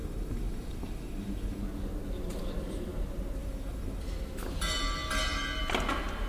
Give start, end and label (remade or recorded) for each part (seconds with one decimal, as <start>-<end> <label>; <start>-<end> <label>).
0.0-1.6 remade; 1.6-3.4 recorded; 3.4-4.0 remade; 4.0-6.3 recorded